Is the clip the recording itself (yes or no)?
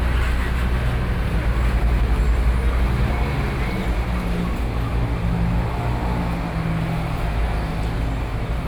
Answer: yes